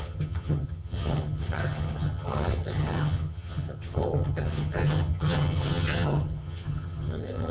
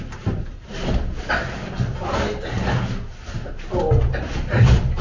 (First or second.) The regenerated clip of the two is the first